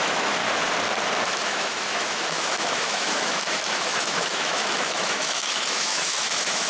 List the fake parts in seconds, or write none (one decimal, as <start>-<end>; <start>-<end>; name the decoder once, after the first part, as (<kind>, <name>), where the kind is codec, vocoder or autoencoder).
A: 0.0-0.4 (autoencoder, DAC-VAE); 1.3-6.7